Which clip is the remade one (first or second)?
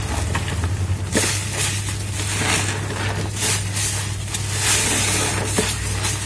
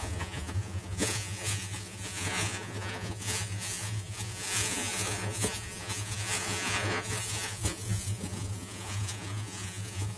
second